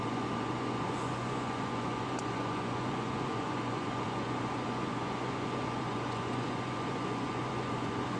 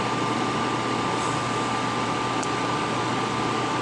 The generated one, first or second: first